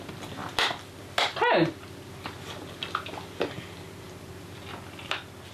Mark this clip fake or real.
real